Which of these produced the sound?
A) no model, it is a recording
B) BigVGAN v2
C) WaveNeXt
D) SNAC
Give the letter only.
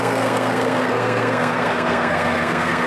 D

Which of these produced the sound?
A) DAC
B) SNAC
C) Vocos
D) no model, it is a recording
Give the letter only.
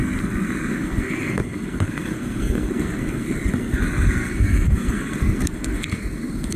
B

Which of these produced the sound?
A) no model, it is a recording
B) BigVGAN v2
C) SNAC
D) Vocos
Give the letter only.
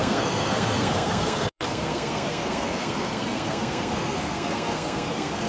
C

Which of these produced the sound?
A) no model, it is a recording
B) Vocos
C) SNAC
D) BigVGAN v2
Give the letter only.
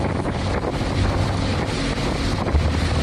A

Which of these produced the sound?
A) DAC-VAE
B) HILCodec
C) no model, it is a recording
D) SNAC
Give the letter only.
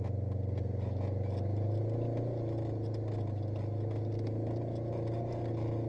C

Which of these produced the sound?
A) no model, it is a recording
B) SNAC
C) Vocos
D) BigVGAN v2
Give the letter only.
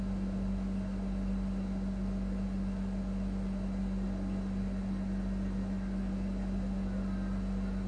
A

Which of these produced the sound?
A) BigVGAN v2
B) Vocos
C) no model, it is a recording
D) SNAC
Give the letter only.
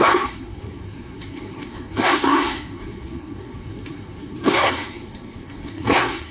D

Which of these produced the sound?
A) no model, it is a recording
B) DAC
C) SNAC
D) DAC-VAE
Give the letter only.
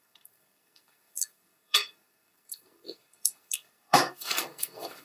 C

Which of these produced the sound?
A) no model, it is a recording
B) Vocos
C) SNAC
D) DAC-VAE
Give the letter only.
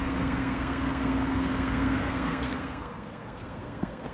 C